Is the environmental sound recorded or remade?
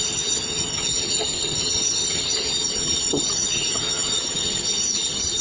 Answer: remade